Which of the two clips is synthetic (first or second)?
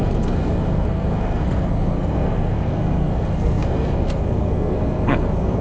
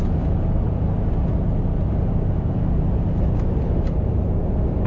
first